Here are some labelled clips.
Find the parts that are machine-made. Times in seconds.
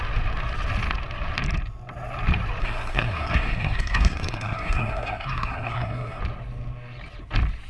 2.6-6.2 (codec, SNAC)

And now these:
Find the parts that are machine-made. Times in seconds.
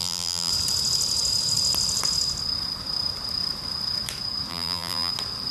0.0-0.5 (vocoder, BigVGAN v2); 4.5-5.1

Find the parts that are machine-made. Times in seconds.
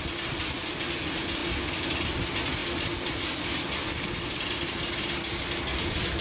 0.0-1.4 (vocoder, BigVGAN v2); 1.9-6.2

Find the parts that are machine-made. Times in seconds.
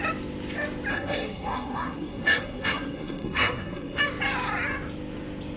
0.9-4.0 (codec, SNAC)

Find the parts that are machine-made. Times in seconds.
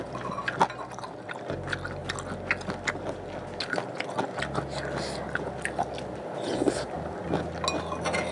none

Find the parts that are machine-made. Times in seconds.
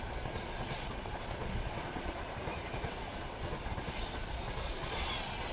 0.0-5.5 (vocoder, Vocos)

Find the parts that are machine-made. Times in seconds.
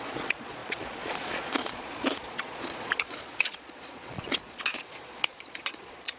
0.0-6.2 (vocoder, Vocos)